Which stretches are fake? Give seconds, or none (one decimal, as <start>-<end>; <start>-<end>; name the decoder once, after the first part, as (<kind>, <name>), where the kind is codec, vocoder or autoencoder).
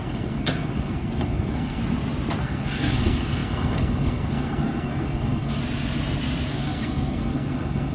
0.0-1.8 (codec, SNAC); 2.4-5.6; 6.5-7.9